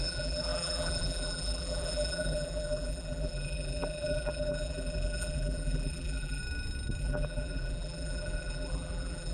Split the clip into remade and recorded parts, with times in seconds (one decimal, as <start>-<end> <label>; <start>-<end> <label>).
0.0-6.4 remade; 6.4-7.0 recorded; 7.0-9.3 remade